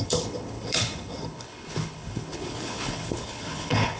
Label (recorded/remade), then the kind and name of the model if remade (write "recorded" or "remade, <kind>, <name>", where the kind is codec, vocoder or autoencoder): remade, codec, HILCodec